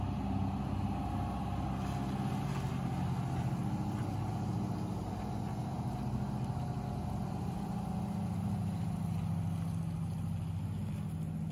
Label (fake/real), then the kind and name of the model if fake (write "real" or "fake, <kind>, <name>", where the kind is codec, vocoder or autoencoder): real